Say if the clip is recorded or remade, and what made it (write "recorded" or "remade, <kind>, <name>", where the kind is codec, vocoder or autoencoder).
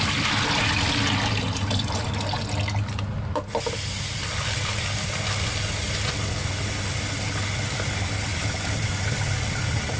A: recorded